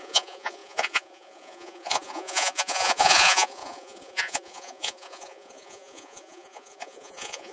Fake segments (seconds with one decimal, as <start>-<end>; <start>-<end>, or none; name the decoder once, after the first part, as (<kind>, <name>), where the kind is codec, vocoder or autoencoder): 0.0-7.5 (vocoder, Vocos)